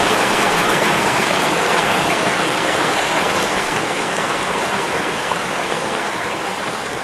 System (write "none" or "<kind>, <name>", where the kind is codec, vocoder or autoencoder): codec, SNAC